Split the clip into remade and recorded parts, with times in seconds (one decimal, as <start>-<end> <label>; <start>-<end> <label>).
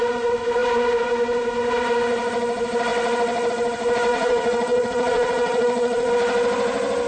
0.0-4.1 recorded; 4.1-6.1 remade; 6.1-7.1 recorded